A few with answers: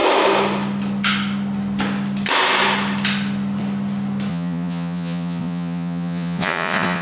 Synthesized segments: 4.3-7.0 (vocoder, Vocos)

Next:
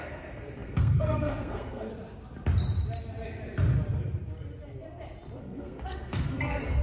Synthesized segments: 0.0-1.9 (codec, SNAC); 5.4-6.8

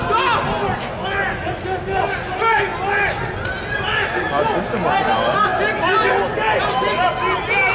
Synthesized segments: none

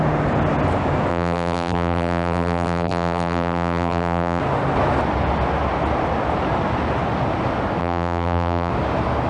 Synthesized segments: 1.1-4.4 (vocoder, BigVGAN v2); 7.8-8.7

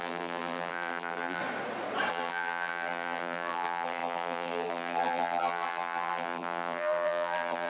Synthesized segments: 0.0-1.4 (vocoder, BigVGAN v2); 2.1-7.7

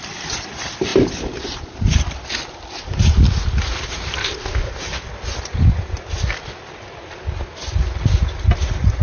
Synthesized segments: 4.2-4.7 (codec, ZipCodec)

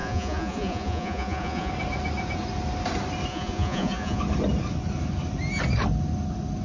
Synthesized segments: 0.0-1.7 (vocoder, Vocos); 3.3-4.2